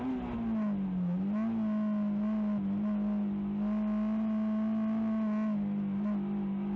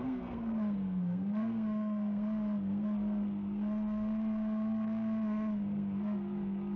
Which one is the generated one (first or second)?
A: second